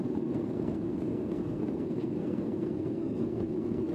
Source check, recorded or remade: remade